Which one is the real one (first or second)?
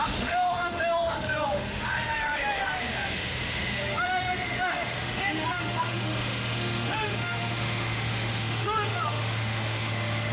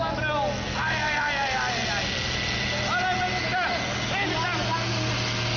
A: second